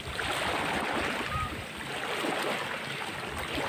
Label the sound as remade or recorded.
recorded